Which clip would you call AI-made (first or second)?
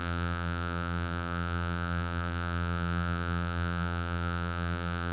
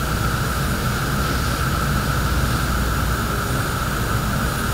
first